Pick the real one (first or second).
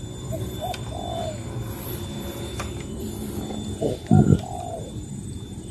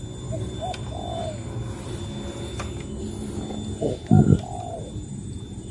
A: second